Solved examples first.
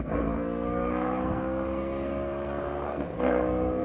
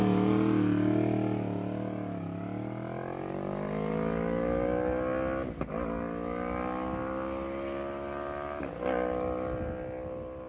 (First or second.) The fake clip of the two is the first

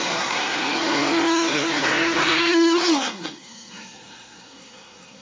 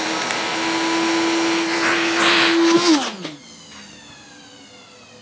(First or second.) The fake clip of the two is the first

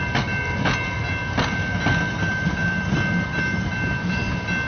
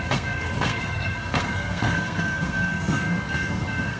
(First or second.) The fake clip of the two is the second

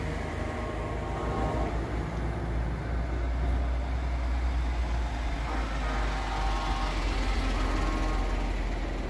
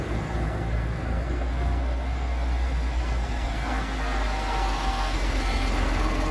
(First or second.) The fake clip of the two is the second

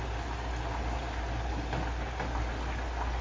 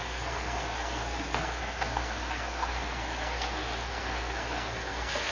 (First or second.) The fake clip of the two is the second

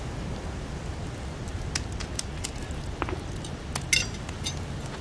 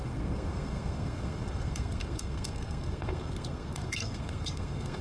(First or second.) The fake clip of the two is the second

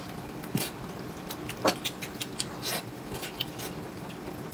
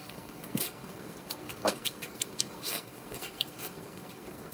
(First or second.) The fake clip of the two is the second